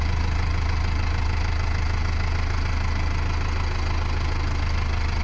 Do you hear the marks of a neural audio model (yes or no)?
no